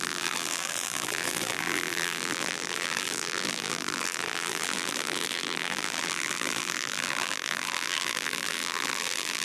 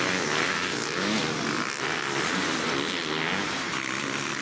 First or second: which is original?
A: second